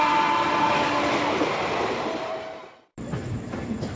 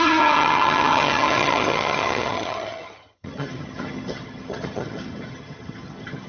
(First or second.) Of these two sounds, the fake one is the second